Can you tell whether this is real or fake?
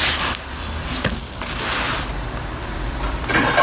fake